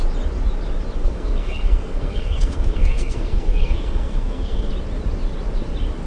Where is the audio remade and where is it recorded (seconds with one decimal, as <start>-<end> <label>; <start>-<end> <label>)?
0.0-1.0 recorded; 1.0-4.7 remade; 4.7-6.1 recorded